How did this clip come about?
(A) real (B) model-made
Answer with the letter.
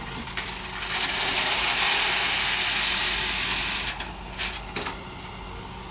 A